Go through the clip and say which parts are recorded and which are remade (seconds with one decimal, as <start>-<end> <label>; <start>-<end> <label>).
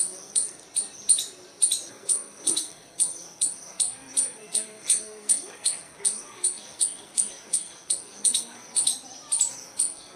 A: 0.0-0.6 remade; 0.6-1.9 recorded; 1.9-8.9 remade; 8.9-9.5 recorded; 9.5-10.2 remade